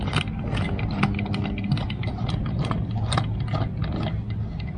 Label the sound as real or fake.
real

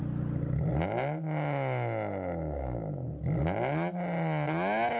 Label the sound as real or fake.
real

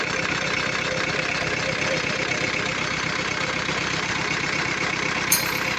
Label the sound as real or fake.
fake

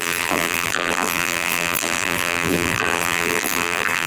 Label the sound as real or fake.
fake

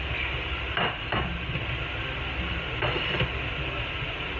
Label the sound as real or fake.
real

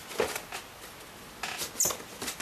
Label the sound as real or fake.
real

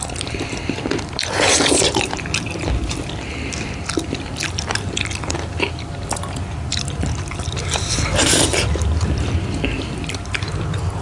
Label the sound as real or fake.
fake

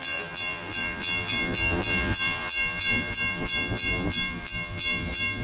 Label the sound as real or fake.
fake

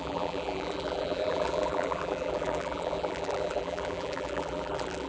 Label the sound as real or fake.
fake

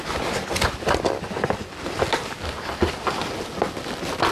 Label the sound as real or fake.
real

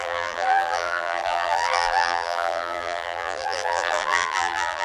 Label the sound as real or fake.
fake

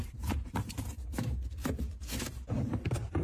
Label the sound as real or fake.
fake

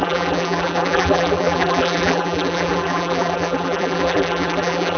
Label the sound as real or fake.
fake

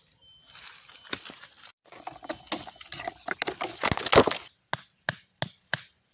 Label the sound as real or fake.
real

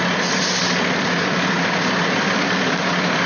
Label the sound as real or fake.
fake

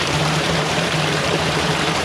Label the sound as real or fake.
fake